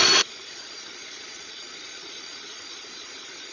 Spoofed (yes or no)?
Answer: yes